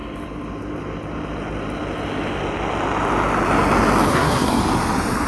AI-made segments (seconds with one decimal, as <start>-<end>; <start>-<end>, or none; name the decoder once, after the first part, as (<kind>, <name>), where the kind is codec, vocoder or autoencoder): 4.1-4.6 (codec, SNAC)